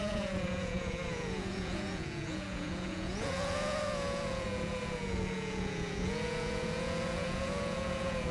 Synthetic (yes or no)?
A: yes